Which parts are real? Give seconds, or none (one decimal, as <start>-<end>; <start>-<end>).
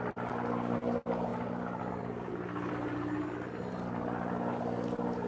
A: 0.0-5.3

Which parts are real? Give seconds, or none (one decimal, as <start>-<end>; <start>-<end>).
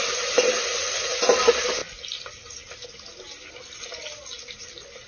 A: 0.0-5.1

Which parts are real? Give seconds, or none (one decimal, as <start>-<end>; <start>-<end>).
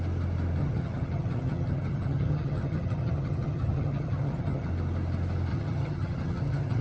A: 0.0-0.6; 4.7-5.5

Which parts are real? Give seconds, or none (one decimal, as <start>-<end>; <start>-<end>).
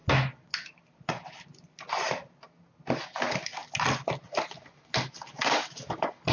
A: 0.0-6.3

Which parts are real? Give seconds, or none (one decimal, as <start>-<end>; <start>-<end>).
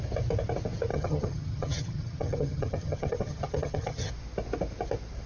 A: 0.0-0.9; 4.1-5.3